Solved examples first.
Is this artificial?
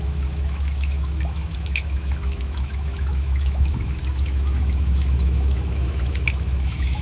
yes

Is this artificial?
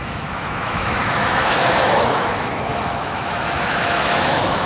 yes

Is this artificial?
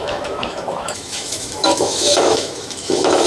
yes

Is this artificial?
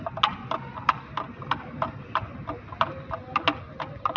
no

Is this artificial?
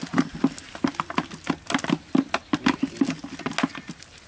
no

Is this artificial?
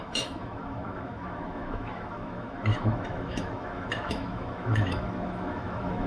yes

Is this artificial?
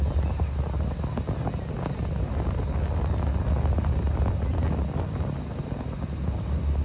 no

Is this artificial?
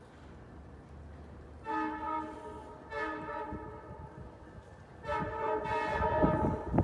no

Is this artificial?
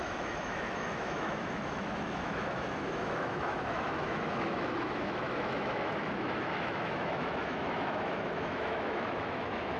yes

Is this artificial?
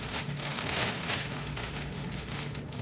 yes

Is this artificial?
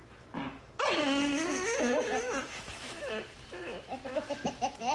yes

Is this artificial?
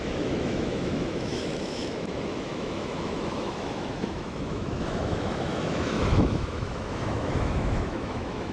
yes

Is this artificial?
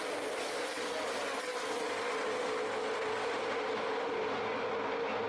no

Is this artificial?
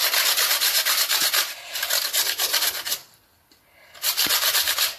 no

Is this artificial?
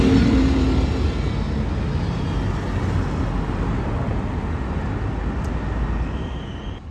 no